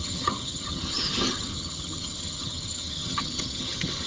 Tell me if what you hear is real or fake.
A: fake